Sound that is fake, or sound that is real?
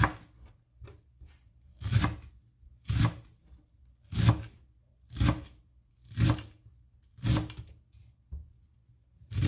real